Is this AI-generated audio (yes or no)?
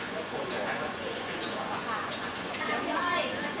yes